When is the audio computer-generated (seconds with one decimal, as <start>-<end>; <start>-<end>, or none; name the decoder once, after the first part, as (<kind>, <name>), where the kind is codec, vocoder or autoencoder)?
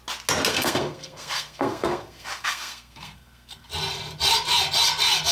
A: 0.5-3.7 (codec, SNAC)